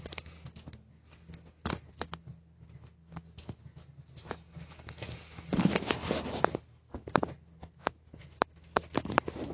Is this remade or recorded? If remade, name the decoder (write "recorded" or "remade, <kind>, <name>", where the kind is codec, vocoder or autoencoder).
recorded